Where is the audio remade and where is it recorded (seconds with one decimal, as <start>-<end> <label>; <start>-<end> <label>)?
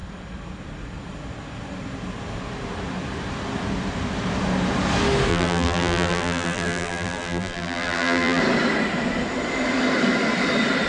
0.0-5.3 recorded; 5.3-8.4 remade; 8.4-10.9 recorded